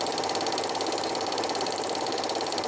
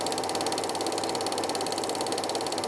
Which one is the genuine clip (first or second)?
second